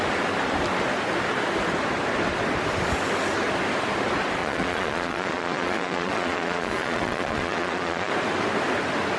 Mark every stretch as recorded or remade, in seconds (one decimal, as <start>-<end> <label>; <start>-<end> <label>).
0.0-4.4 recorded; 4.4-8.1 remade; 8.1-9.2 recorded